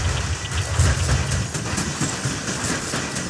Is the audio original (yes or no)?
yes